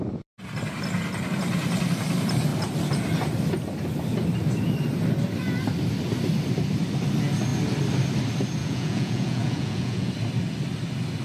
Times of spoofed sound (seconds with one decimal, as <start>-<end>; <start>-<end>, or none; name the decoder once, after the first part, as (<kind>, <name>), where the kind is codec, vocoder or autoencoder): 8.6-10.1 (vocoder, Vocos)